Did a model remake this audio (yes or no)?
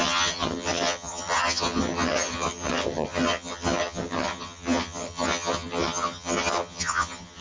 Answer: yes